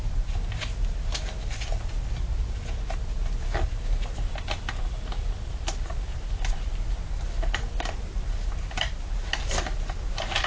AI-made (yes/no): no